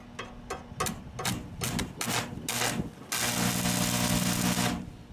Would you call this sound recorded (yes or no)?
yes